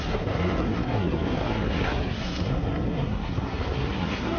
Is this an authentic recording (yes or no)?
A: no